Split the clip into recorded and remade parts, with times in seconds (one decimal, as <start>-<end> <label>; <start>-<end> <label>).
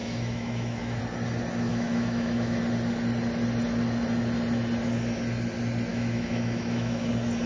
0.0-1.0 remade; 1.0-1.7 recorded; 1.7-2.6 remade; 2.6-5.9 recorded; 5.9-7.1 remade; 7.1-7.5 recorded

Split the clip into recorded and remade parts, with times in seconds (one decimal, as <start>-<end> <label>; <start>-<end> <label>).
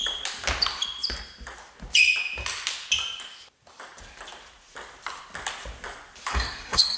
0.0-6.3 recorded; 6.3-7.0 remade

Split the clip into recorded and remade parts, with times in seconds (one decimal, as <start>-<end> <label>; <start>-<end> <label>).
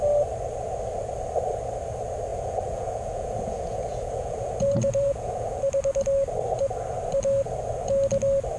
0.0-2.3 recorded; 2.3-5.6 remade; 5.6-8.6 recorded